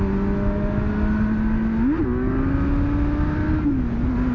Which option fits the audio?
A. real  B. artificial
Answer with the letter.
A